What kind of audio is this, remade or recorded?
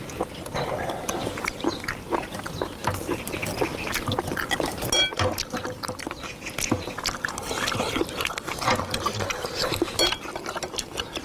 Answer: recorded